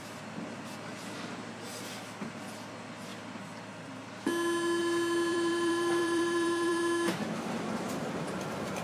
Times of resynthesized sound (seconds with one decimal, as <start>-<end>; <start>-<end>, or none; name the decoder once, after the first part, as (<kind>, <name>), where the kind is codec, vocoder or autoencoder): 5.3-6.8 (vocoder, BigVGAN v2)